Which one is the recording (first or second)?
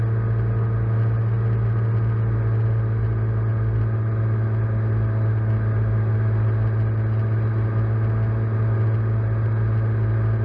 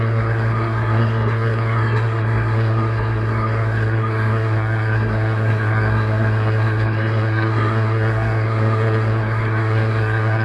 first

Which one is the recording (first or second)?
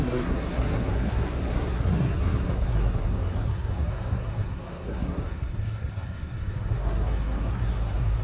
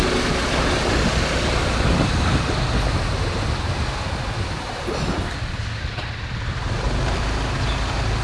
second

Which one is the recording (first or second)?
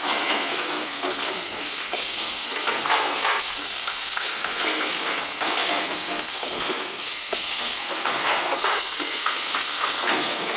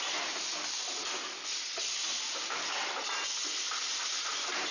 second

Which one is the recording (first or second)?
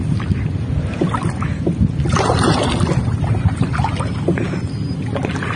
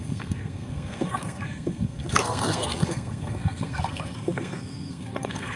first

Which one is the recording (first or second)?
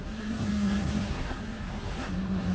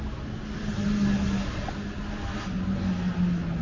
second